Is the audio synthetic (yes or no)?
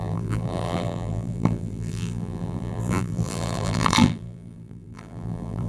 yes